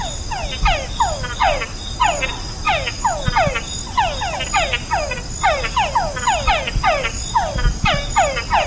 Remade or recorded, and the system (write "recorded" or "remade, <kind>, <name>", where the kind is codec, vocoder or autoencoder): recorded